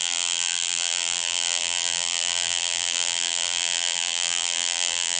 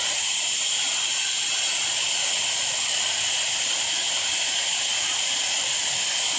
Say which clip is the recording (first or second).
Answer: second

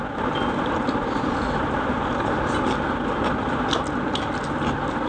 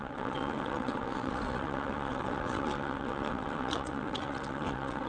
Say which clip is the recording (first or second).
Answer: first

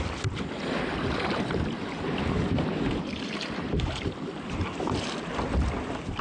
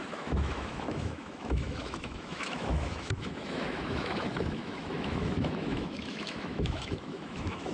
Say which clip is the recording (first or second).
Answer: first